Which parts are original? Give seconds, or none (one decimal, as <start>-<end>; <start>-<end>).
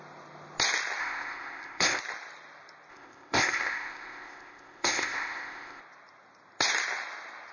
0.0-1.0; 2.0-2.9; 5.8-7.5